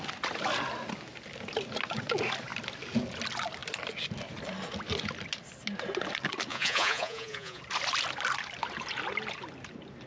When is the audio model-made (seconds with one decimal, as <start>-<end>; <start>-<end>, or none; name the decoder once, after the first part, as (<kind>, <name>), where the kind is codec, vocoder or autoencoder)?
6.5-7.6 (vocoder, Vocos)